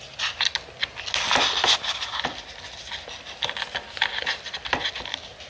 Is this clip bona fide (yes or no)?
yes